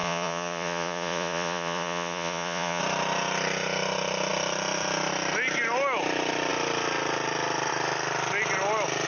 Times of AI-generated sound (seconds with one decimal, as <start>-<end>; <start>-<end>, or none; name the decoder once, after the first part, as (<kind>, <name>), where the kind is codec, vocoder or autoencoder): 0.0-2.8 (vocoder, Vocos)